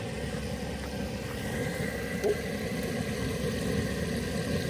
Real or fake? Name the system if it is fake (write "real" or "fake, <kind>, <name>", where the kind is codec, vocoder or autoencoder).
real